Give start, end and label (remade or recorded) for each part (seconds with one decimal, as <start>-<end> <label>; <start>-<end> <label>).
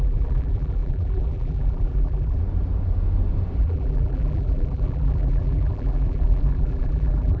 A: 0.0-2.4 remade; 2.4-3.6 recorded; 3.6-7.4 remade